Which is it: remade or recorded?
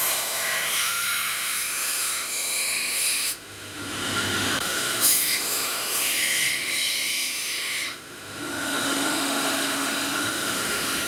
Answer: remade